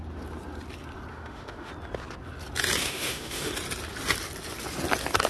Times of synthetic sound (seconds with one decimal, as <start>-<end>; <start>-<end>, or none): 1.1-1.7; 2.8-3.5